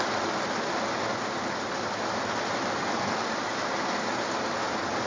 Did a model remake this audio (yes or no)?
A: no